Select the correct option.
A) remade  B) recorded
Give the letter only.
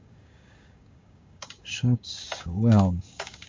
A